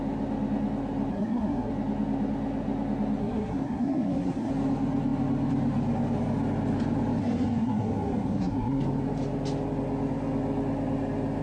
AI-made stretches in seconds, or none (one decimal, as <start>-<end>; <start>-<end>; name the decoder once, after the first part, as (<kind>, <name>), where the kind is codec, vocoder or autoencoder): 1.1-1.7 (codec, SNAC); 3.2-4.5; 7.2-8.8